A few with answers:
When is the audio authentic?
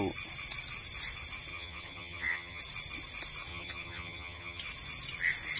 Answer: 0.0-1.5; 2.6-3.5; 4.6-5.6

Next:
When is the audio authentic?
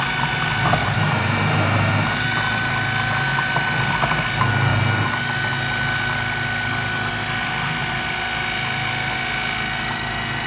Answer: 0.0-0.8; 2.7-10.5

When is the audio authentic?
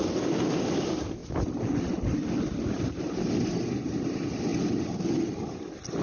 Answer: 1.2-4.0; 4.5-5.2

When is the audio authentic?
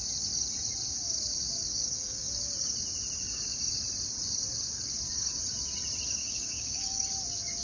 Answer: 0.0-1.7; 2.3-6.2; 7.1-7.6